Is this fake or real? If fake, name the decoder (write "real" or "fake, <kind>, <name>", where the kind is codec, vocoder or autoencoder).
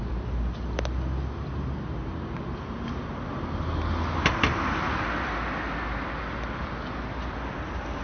real